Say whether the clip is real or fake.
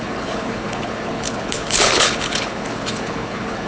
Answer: fake